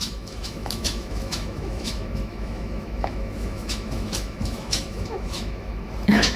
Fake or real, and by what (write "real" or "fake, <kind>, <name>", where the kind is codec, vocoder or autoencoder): fake, autoencoder, DAC-VAE